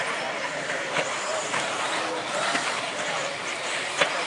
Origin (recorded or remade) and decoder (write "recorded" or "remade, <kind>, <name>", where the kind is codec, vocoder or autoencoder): remade, vocoder, BigVGAN v2